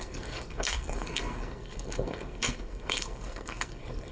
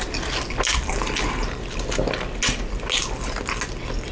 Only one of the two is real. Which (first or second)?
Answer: second